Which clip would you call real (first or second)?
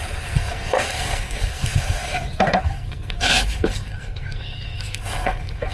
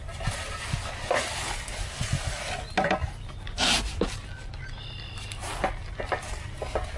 second